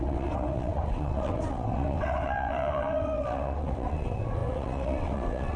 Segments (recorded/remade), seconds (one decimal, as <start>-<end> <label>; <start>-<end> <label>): 0.0-5.6 remade